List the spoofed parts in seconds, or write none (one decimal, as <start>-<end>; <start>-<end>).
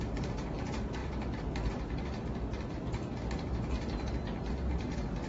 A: none